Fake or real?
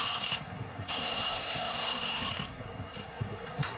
fake